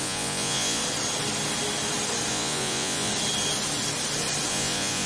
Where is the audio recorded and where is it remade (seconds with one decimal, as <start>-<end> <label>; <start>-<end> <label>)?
0.0-0.8 remade; 0.8-2.3 recorded; 2.3-3.1 remade; 3.1-4.5 recorded; 4.5-5.1 remade